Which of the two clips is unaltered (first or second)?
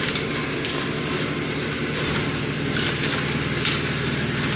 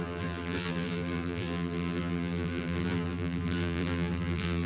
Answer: first